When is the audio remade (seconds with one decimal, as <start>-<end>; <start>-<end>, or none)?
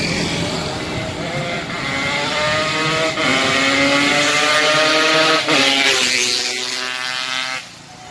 none